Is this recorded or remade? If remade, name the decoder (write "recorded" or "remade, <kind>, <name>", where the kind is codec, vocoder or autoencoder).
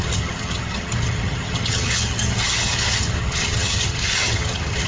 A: remade, vocoder, HiFi-GAN